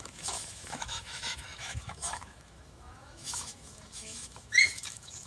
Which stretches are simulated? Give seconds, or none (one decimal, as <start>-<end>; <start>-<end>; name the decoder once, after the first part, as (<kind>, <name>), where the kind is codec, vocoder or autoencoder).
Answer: 0.0-5.3 (autoencoder, DAC-VAE)